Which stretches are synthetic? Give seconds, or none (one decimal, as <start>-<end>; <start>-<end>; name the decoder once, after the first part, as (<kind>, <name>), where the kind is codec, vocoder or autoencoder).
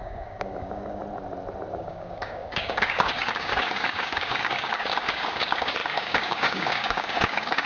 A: 0.0-1.0 (codec, DAC); 1.7-7.7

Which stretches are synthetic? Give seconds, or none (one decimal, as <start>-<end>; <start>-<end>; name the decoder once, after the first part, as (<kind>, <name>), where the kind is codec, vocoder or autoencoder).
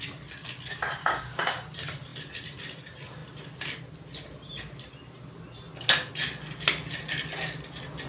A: 1.0-1.5 (codec, DAC)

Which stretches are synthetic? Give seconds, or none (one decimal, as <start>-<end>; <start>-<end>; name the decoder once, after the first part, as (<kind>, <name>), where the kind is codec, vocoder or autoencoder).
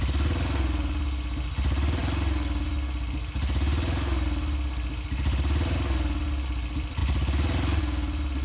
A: none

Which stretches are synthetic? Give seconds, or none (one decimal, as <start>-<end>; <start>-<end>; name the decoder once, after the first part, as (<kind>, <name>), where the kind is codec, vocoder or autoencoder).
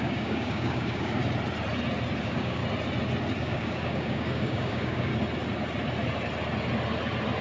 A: 0.0-1.2 (codec, DAC); 2.2-2.6; 3.4-5.1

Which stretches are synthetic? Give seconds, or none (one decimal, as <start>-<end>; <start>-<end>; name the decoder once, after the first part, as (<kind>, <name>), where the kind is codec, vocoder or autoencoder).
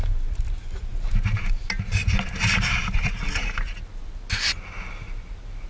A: none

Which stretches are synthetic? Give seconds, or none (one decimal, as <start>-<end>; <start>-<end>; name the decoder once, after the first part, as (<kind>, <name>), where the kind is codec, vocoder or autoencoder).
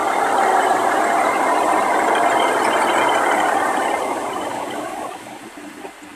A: 4.5-5.4 (codec, DAC)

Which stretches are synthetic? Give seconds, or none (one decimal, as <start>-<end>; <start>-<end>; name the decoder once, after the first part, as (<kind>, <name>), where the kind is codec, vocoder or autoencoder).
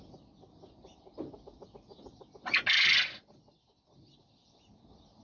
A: none